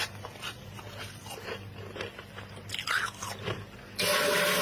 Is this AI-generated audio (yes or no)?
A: no